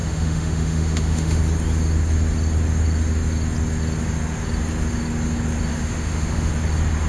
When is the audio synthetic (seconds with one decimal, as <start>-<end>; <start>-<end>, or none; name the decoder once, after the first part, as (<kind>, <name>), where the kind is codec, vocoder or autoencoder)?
0.0-1.4 (autoencoder, DAC-VAE); 5.7-6.5